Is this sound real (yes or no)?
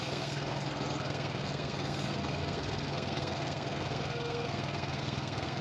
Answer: no